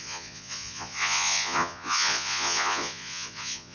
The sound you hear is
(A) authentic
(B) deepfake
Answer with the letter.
B